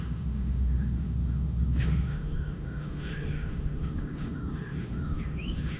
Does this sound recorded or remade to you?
remade